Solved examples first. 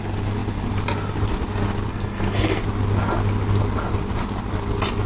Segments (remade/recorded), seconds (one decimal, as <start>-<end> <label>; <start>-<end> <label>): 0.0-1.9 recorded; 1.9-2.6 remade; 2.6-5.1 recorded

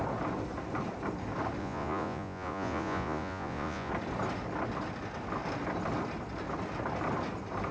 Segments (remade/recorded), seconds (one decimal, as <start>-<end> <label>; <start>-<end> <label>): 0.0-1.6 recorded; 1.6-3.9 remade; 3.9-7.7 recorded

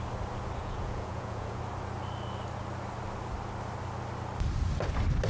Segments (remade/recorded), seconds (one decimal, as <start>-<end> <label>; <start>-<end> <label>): 0.0-0.6 recorded; 0.6-1.6 remade; 1.6-5.3 recorded

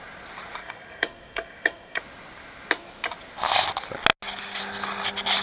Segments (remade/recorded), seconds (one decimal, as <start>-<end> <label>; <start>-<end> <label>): 0.0-0.6 recorded; 0.6-2.0 remade; 2.0-5.4 recorded

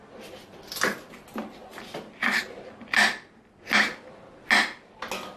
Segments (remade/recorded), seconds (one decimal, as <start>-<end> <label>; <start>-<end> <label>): 0.0-5.4 recorded

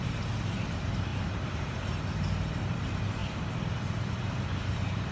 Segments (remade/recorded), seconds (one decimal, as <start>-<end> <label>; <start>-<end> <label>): 0.0-3.2 remade; 3.2-4.1 recorded; 4.1-5.1 remade